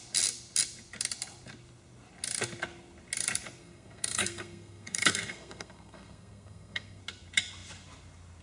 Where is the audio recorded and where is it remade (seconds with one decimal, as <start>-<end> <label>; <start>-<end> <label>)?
0.0-3.6 recorded; 3.6-7.0 remade; 7.0-8.4 recorded